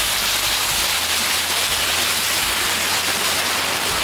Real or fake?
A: real